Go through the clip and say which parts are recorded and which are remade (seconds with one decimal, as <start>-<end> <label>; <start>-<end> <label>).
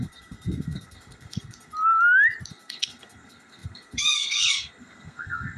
0.0-1.7 remade; 1.7-2.5 recorded; 2.5-5.6 remade